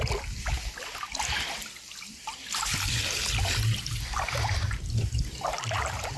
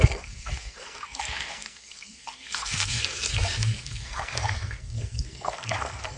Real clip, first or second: first